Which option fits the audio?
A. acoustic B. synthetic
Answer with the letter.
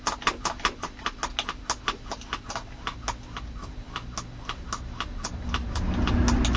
A